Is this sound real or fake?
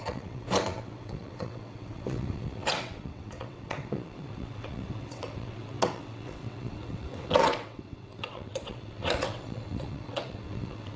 fake